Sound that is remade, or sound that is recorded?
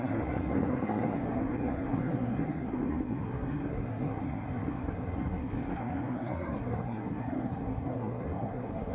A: remade